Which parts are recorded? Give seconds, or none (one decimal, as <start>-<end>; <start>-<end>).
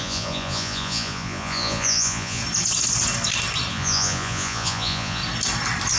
2.4-3.7; 5.2-6.0